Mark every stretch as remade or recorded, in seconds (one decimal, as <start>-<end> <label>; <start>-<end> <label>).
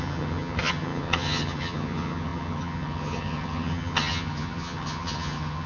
0.0-5.7 remade